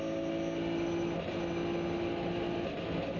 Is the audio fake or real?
real